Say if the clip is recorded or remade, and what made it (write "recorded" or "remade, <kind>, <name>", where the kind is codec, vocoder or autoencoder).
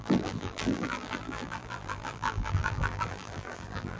remade, vocoder, BigVGAN v2